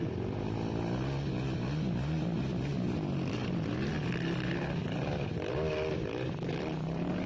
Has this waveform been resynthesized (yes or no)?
no